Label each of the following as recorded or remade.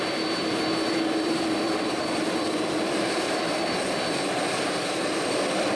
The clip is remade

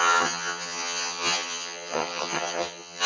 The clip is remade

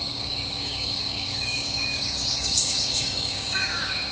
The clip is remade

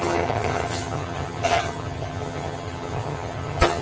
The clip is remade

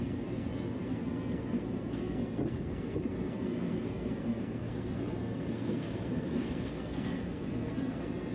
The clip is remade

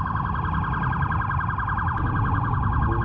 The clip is recorded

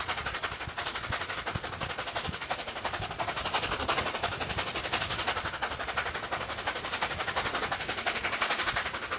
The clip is recorded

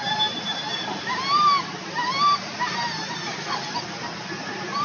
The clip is recorded